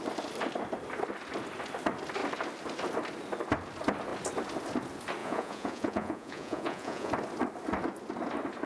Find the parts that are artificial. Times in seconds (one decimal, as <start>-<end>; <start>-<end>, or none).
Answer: 5.2-7.1